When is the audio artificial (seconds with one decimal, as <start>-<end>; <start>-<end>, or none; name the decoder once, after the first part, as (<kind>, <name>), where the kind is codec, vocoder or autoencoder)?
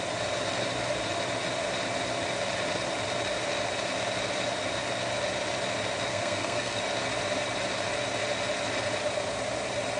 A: 6.1-6.8 (codec, SNAC)